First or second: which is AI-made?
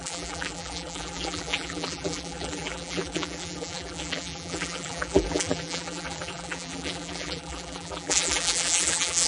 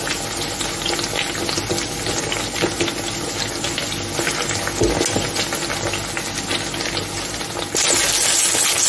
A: first